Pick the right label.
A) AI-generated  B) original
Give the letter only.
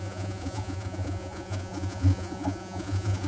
A